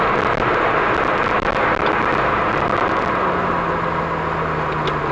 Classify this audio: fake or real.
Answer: real